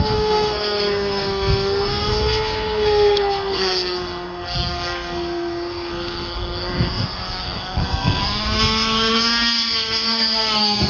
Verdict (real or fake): fake